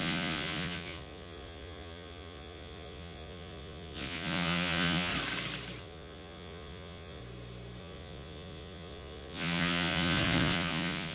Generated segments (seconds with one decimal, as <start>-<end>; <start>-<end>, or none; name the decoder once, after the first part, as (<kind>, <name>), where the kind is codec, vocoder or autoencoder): 0.0-5.1 (vocoder, Vocos); 5.8-7.2; 7.8-11.1